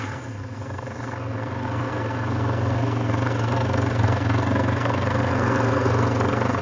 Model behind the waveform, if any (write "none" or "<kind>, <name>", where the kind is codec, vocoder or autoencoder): codec, SNAC